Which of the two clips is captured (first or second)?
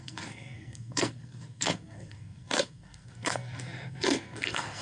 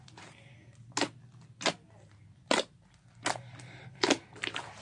second